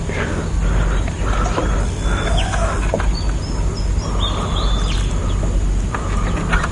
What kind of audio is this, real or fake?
real